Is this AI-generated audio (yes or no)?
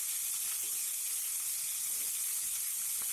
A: no